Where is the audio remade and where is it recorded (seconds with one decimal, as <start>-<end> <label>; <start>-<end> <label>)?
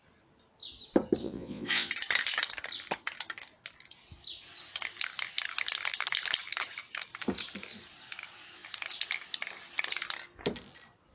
0.0-1.2 recorded; 1.2-1.9 remade; 1.9-11.1 recorded